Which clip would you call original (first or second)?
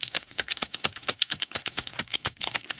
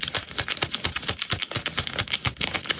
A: second